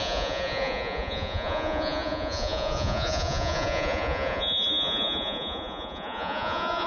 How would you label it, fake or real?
fake